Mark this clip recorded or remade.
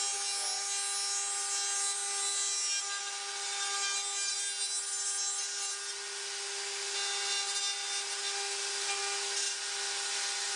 recorded